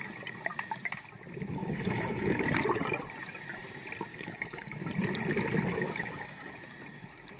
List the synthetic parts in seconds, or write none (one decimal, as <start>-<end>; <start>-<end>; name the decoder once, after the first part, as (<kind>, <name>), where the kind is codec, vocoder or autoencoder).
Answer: 1.6-2.4 (codec, DAC); 4.1-4.8; 5.7-6.5